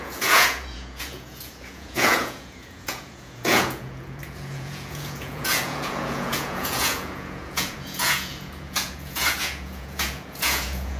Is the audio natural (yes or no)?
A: no